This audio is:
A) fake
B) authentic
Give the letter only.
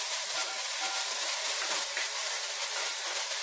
A